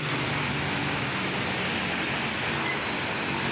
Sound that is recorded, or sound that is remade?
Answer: recorded